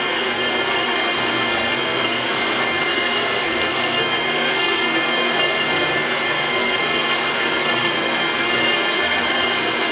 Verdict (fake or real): fake